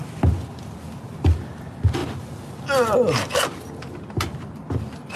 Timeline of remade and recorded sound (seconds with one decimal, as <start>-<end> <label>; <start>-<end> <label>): 0.0-5.2 recorded